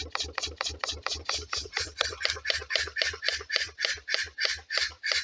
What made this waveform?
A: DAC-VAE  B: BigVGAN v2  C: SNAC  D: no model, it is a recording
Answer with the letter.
B